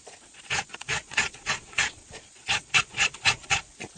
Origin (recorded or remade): remade